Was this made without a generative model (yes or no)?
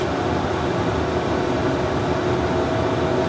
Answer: yes